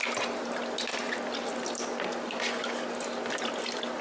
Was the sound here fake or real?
real